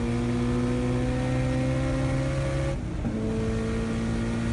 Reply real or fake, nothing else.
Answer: real